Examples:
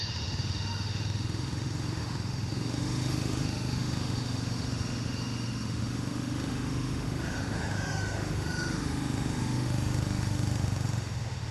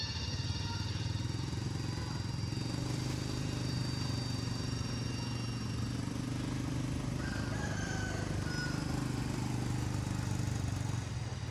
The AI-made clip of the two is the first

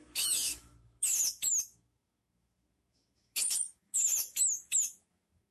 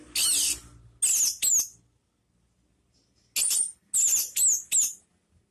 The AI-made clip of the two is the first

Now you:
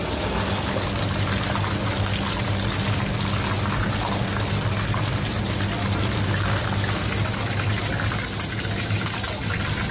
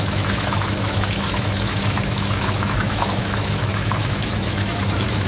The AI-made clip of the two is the second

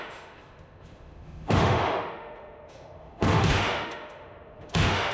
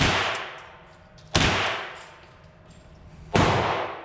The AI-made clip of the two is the first